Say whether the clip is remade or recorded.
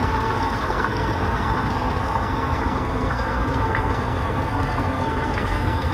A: remade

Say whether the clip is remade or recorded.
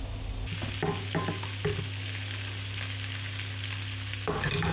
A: recorded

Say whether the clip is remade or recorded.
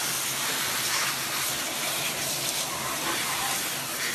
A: recorded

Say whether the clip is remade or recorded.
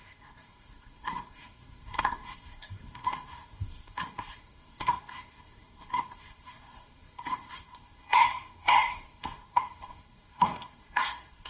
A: remade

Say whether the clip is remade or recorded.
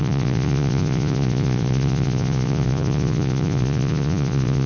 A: remade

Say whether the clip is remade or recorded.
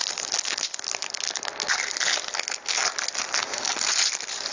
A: recorded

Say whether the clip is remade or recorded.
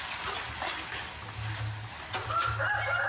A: recorded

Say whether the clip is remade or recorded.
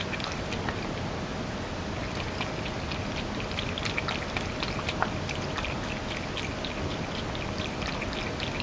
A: recorded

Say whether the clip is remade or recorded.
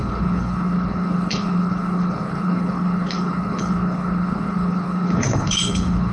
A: remade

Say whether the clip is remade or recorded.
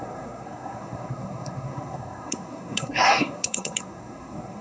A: remade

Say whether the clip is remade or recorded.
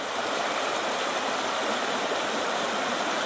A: recorded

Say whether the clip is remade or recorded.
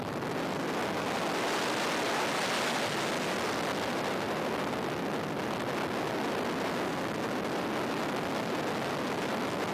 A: recorded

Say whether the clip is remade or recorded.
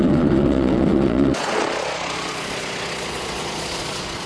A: remade